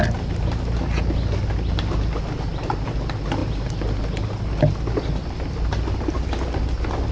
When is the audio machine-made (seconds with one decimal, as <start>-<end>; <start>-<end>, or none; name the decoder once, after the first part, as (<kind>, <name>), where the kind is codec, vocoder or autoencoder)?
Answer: none